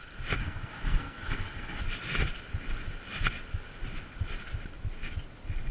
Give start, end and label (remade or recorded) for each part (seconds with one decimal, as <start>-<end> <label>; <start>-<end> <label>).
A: 0.0-0.4 recorded; 0.4-1.8 remade; 1.8-5.7 recorded